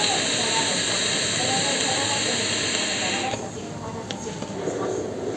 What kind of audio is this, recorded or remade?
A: recorded